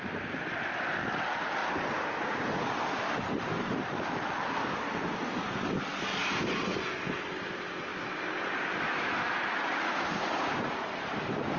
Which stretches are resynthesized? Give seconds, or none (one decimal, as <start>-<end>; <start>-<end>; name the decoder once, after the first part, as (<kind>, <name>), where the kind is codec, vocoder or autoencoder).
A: 0.0-1.6 (vocoder, BigVGAN v2); 2.9-7.9; 8.7-11.6